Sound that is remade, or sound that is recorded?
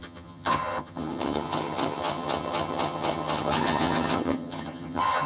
remade